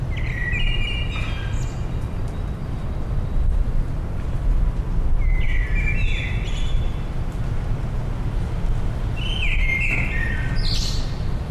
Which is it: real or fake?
real